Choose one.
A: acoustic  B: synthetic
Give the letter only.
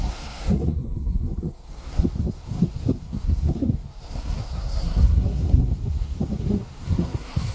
B